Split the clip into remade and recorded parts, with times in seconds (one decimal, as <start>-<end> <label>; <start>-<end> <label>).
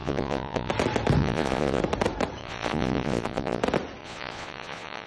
0.0-0.7 remade; 0.7-1.2 recorded; 1.2-1.8 remade; 1.8-2.4 recorded; 2.4-3.6 remade; 3.6-4.0 recorded; 4.0-5.1 remade